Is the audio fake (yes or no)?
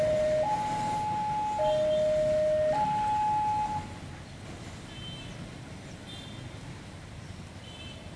no